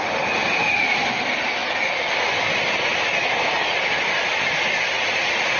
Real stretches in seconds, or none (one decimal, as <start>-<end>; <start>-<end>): 0.0-5.6